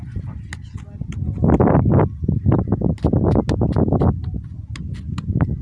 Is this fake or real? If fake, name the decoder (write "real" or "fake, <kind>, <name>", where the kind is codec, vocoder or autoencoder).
real